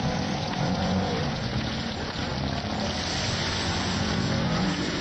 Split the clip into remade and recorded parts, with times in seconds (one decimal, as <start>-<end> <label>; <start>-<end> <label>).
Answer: 0.0-2.3 remade; 2.3-3.2 recorded; 3.2-5.0 remade